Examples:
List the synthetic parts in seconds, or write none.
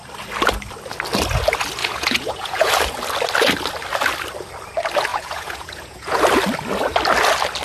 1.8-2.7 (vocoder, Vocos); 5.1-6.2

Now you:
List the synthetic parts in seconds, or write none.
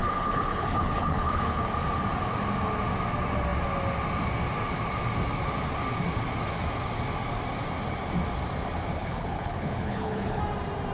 0.0-1.7 (codec, HILCodec); 8.9-10.4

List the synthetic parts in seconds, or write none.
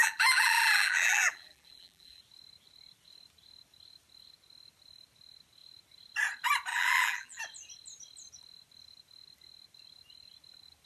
0.0-2.2 (vocoder, BigVGAN v2); 6.7-7.4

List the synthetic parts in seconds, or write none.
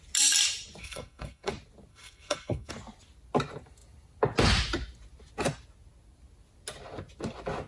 0.8-1.5 (codec, SNAC); 1.9-2.7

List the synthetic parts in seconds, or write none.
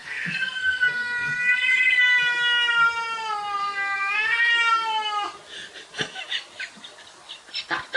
0.0-2.0 (codec, SNAC); 3.6-4.5